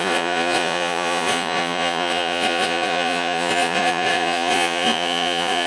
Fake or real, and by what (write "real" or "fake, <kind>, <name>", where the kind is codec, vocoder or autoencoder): fake, vocoder, Vocos